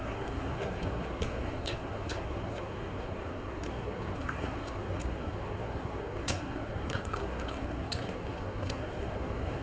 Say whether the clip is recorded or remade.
remade